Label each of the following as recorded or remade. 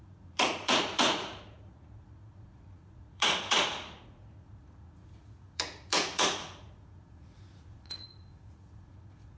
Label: remade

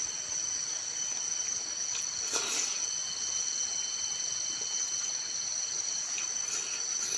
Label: recorded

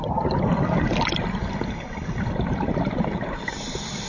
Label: recorded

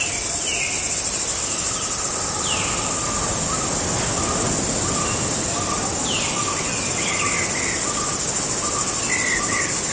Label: recorded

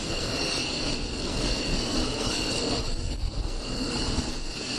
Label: remade